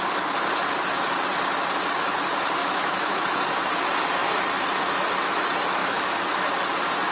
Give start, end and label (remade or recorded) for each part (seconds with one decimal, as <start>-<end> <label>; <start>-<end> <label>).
0.0-2.6 recorded; 2.6-3.4 remade; 3.4-5.8 recorded; 5.8-6.6 remade; 6.6-7.1 recorded